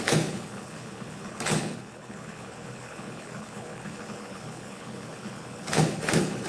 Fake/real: fake